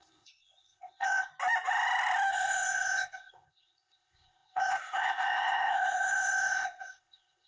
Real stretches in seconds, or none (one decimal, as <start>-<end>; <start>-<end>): 1.3-2.3